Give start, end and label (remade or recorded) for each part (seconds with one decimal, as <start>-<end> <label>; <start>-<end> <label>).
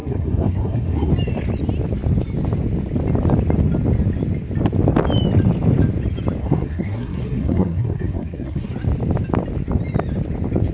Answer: 0.0-1.1 remade; 1.1-6.4 recorded; 6.4-8.7 remade; 8.7-10.7 recorded